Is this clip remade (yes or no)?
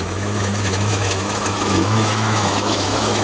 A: yes